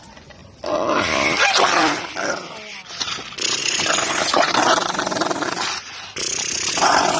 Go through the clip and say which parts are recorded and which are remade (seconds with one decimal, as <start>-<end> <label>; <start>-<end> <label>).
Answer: 0.0-0.4 remade; 0.4-3.6 recorded; 3.6-4.5 remade; 4.5-6.7 recorded; 6.7-7.2 remade